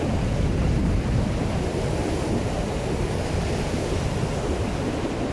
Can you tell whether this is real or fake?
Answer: real